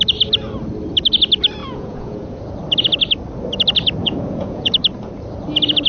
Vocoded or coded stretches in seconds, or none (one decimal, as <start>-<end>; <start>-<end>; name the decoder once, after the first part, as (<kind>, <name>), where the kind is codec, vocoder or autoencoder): 1.6-2.4 (vocoder, Vocos); 4.0-4.7